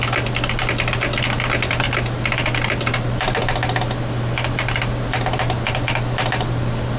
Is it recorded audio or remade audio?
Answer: recorded